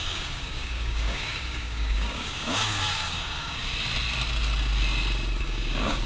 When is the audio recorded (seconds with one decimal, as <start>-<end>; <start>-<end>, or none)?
3.6-5.4